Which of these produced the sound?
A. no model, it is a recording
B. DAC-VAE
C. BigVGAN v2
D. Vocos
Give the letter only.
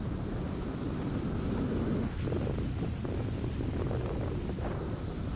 A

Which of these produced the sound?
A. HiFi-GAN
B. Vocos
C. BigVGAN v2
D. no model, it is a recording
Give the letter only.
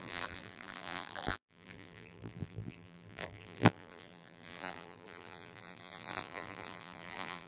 C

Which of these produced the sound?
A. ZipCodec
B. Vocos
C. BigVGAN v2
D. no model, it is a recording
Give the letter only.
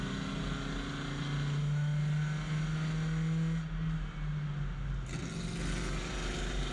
D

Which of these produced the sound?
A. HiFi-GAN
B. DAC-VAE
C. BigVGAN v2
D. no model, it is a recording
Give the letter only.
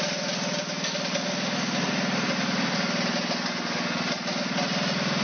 D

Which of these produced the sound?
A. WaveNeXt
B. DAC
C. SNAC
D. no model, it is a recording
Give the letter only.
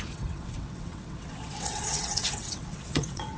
A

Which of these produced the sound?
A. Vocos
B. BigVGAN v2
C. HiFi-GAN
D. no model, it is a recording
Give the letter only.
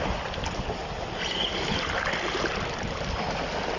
D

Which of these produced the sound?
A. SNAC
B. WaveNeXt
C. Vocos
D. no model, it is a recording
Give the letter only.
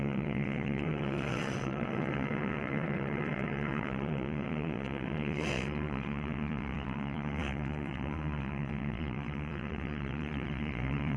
B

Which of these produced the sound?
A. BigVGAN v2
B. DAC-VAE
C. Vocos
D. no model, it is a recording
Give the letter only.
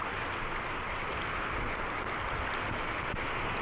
D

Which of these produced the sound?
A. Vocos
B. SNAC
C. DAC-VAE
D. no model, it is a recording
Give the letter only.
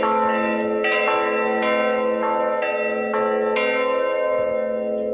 D